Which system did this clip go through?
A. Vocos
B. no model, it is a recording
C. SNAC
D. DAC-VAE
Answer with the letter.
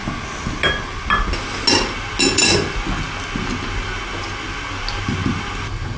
B